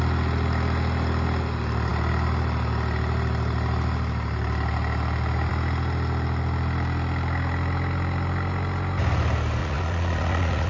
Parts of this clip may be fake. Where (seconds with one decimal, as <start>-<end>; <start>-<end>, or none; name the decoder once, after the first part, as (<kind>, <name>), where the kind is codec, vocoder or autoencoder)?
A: 9.6-10.7 (vocoder, Vocos)